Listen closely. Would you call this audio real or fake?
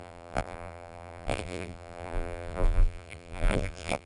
fake